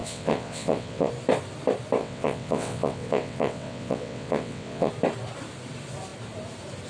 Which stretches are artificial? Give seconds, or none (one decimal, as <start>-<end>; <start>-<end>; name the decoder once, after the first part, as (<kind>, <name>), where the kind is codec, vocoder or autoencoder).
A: 0.0-1.1 (vocoder, WaveNeXt); 2.0-4.9